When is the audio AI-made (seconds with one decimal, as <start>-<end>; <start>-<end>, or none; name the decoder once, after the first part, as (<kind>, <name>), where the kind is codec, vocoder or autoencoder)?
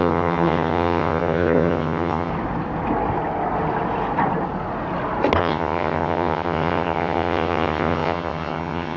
0.0-2.3 (vocoder, HiFi-GAN); 5.4-9.0